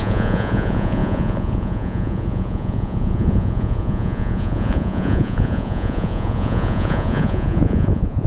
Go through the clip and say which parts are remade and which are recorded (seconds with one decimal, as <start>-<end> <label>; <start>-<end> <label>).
0.0-8.3 remade